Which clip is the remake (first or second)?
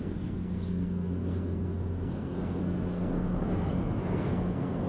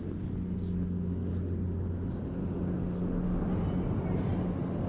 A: first